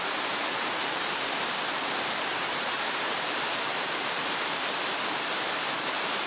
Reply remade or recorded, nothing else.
remade